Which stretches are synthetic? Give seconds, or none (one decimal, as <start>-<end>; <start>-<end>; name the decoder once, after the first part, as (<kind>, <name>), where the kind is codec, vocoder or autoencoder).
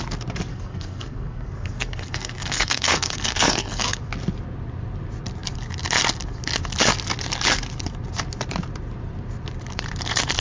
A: 0.5-4.0 (codec, SNAC)